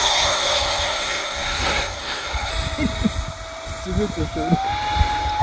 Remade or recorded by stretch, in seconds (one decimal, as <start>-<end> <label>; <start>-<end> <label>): 0.0-2.5 remade; 2.5-5.4 recorded